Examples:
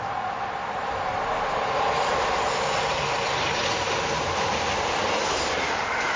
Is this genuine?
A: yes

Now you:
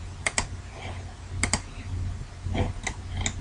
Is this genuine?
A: yes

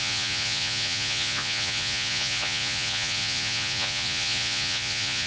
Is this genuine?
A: no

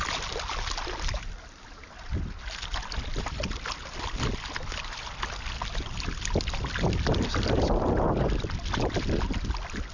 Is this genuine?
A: yes